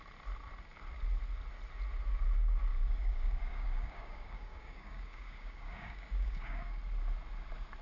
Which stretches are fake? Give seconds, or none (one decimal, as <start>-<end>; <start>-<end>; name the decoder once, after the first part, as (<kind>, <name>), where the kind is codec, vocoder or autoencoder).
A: 2.7-6.8 (codec, DAC)